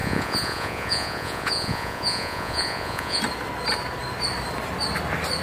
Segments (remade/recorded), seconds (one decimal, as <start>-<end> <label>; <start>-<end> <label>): 0.0-3.2 remade; 3.2-5.4 recorded